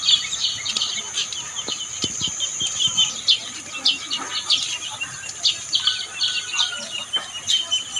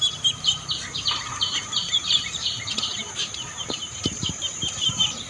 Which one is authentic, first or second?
first